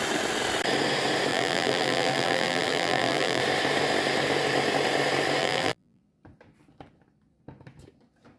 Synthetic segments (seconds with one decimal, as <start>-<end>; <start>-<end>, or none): 1.3-3.4; 5.4-6.0